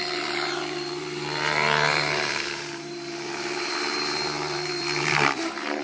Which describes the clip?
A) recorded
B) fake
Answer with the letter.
B